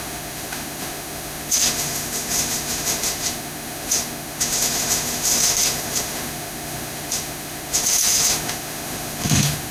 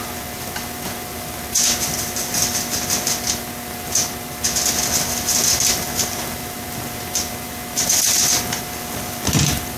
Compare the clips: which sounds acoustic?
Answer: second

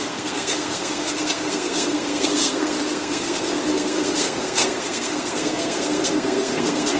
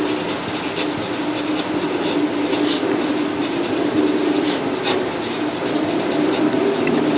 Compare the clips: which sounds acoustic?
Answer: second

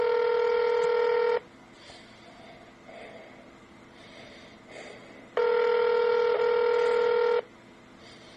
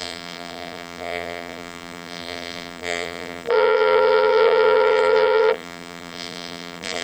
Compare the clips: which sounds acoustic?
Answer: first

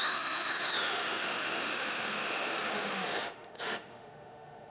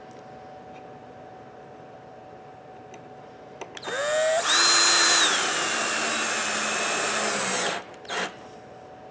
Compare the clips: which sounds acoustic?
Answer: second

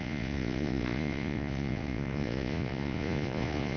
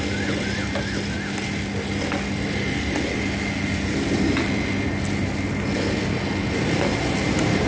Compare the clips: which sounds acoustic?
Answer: second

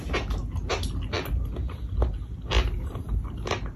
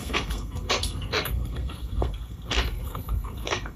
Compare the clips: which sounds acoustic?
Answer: first